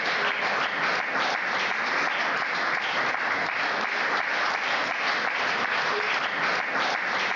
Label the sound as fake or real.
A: real